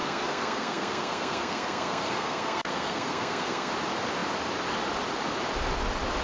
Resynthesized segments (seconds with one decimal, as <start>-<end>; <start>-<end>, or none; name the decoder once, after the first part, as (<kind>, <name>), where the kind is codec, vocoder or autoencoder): 0.0-3.7 (codec, SNAC)